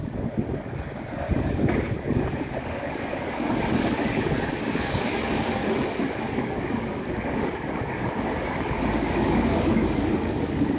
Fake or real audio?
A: fake